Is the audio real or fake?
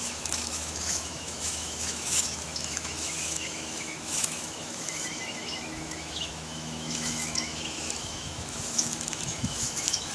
fake